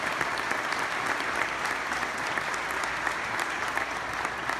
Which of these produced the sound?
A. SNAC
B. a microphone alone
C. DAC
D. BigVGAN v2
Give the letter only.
B